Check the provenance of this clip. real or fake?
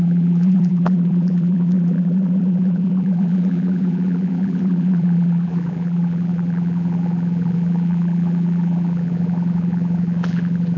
fake